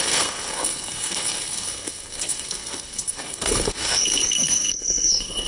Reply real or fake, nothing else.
fake